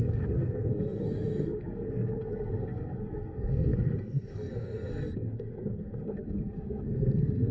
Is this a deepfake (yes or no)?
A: yes